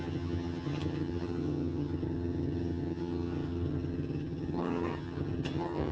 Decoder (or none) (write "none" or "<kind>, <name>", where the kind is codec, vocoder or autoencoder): vocoder, HiFi-GAN